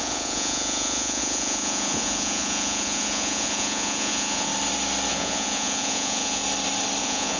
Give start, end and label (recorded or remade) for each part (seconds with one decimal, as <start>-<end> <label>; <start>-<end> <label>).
0.0-4.5 remade; 4.5-5.1 recorded; 5.1-6.4 remade; 6.4-7.0 recorded; 7.0-7.4 remade